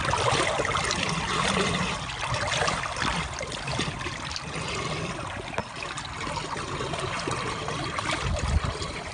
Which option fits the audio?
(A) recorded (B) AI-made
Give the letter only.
A